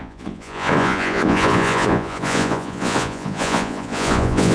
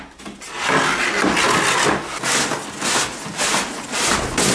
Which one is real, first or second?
second